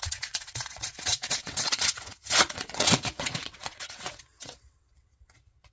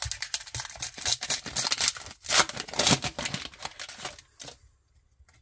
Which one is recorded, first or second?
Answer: second